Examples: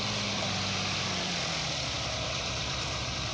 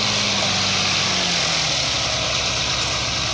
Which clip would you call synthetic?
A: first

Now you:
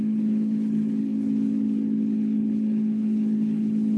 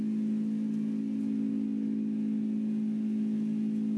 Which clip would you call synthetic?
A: first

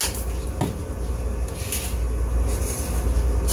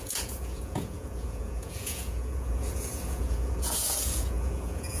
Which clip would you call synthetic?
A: second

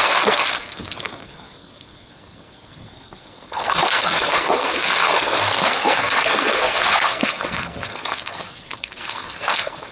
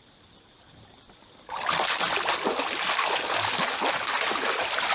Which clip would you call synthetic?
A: first